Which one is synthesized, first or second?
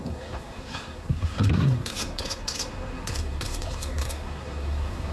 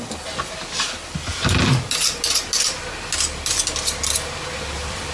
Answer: first